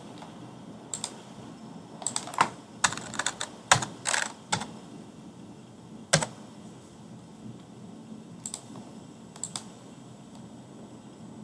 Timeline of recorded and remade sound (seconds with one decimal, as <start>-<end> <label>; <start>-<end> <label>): 0.0-11.4 recorded